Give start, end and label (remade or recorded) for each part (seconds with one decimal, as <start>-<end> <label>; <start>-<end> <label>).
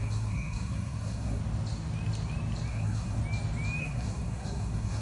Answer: 0.0-1.4 remade; 1.4-2.7 recorded; 2.7-3.2 remade; 3.2-3.8 recorded; 3.8-5.0 remade